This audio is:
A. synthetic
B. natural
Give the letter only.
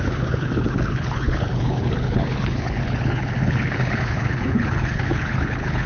A